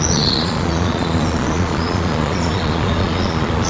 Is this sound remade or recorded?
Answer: remade